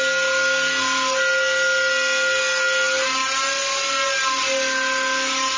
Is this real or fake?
real